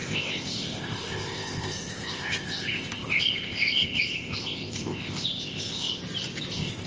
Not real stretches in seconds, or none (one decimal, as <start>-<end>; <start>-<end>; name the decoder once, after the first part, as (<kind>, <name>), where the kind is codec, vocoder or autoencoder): 0.0-6.0 (codec, ZipCodec); 6.5-6.9